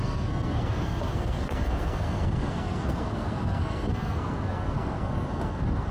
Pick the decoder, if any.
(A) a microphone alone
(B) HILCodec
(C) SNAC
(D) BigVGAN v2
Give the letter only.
C